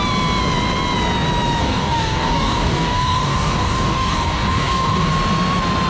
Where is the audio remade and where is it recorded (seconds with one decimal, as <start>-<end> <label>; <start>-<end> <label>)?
0.0-1.6 recorded; 1.6-5.1 remade; 5.1-5.9 recorded